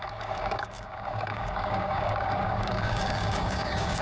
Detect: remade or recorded remade